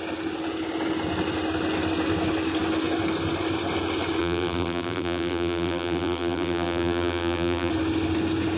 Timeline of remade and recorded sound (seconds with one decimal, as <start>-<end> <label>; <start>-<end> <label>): 0.0-4.2 recorded; 4.2-7.7 remade; 7.7-8.6 recorded

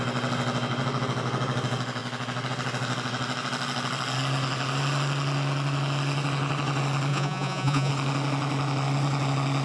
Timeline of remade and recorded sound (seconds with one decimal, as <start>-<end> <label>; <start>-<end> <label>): 0.0-7.1 recorded; 7.1-7.9 remade; 7.9-9.6 recorded